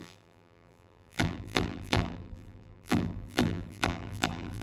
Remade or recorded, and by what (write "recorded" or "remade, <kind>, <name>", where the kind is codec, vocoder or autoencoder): remade, vocoder, BigVGAN v2